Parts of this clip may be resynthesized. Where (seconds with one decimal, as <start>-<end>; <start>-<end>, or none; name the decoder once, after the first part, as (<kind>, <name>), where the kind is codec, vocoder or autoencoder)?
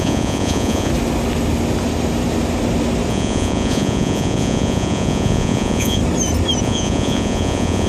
0.0-0.9 (vocoder, Vocos); 3.1-6.0; 6.6-7.9